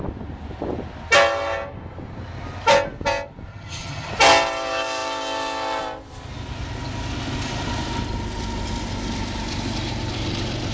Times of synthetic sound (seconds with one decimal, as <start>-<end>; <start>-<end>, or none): 3.5-4.1